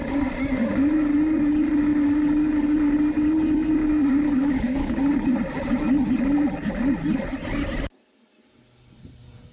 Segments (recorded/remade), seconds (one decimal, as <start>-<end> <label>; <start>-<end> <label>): 0.0-4.4 recorded; 4.4-5.0 remade; 5.0-9.5 recorded